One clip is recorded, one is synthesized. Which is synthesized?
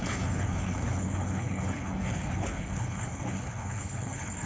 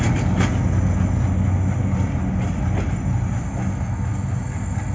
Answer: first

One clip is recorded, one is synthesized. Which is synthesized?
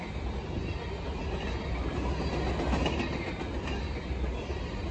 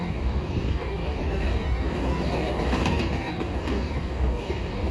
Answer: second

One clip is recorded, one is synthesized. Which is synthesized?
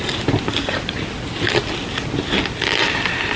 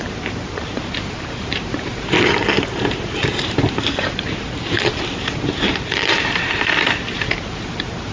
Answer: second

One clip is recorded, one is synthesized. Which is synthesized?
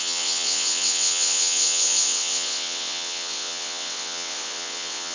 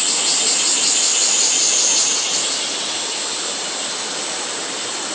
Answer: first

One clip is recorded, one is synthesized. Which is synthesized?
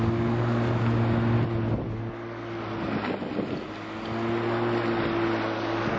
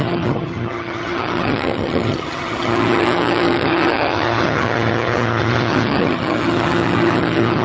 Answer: second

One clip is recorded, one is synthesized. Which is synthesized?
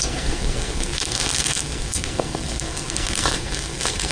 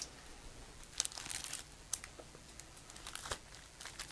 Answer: first